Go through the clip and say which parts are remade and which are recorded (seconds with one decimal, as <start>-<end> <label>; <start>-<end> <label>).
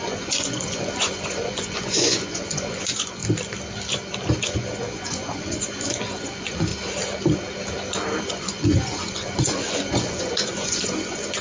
0.0-3.2 remade; 3.2-4.4 recorded; 4.4-6.7 remade; 6.7-8.3 recorded; 8.3-11.4 remade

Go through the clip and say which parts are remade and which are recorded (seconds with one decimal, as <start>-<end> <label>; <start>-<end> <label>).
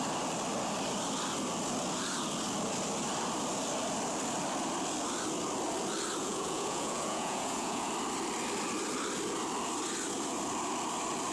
0.0-6.2 recorded; 6.2-7.9 remade; 7.9-11.3 recorded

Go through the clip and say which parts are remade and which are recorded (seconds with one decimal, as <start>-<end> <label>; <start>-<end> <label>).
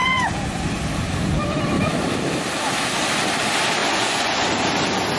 0.0-0.8 remade; 0.8-3.8 recorded; 3.8-4.5 remade; 4.5-5.2 recorded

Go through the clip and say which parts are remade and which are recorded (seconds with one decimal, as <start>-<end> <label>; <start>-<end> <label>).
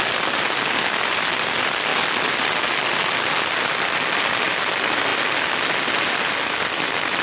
0.0-7.2 recorded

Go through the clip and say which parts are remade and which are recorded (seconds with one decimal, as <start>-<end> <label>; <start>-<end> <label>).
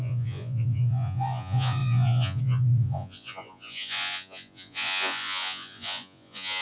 0.0-6.6 remade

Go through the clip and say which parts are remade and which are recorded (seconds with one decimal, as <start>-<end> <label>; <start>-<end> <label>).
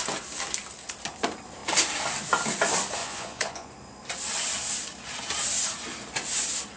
0.0-3.0 recorded; 3.0-3.7 remade; 3.7-6.8 recorded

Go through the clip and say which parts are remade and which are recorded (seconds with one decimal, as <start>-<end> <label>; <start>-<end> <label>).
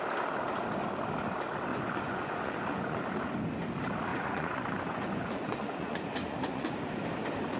0.0-1.7 recorded; 1.7-3.0 remade; 3.0-4.1 recorded; 4.1-6.8 remade; 6.8-7.6 recorded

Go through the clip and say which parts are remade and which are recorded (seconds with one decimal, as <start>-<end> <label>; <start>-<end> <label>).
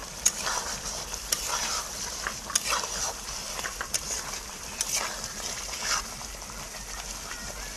0.0-7.8 recorded